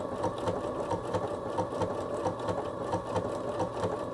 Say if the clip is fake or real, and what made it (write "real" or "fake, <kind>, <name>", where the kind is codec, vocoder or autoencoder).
real